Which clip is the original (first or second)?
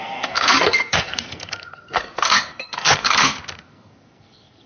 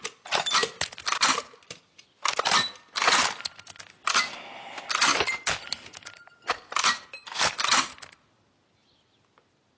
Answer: second